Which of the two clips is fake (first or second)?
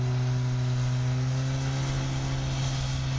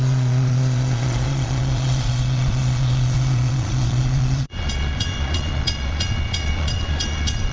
second